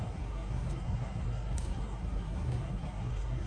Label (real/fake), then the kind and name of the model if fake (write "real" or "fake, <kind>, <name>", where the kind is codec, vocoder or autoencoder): fake, codec, SNAC